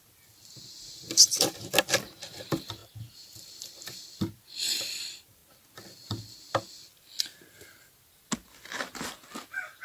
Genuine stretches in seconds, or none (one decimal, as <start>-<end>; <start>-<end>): 2.8-4.3; 5.4-9.8